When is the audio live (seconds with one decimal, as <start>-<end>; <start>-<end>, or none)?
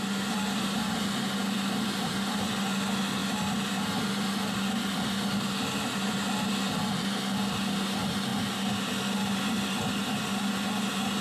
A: 0.0-11.2